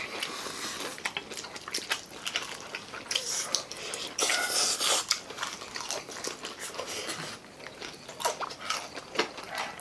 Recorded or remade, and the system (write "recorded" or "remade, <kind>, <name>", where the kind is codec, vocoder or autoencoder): recorded